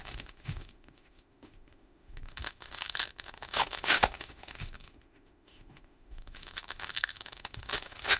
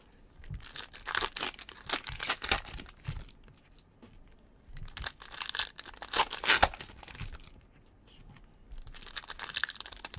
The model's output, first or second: first